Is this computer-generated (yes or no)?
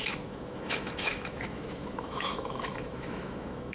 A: yes